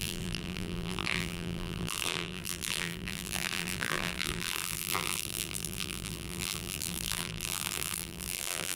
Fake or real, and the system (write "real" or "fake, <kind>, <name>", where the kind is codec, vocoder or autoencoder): fake, vocoder, BigVGAN v2